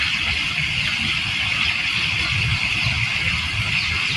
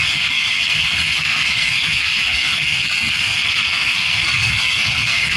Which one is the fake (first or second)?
second